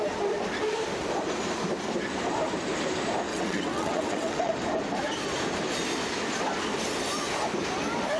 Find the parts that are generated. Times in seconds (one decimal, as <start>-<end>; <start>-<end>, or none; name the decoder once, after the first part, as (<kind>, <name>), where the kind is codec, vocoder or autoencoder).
3.3-4.5 (vocoder, WaveNeXt)